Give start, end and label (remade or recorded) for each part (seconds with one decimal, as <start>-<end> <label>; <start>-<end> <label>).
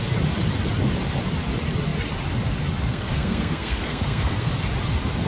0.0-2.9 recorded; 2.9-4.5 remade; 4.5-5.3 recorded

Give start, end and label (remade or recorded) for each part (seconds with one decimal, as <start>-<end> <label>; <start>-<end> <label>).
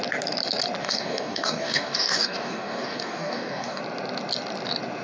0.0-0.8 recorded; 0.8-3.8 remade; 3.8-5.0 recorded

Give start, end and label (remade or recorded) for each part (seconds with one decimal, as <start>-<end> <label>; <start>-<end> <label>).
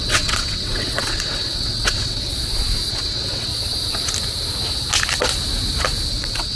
0.0-2.3 remade; 2.3-2.9 recorded; 2.9-3.5 remade; 3.5-6.1 recorded; 6.1-6.6 remade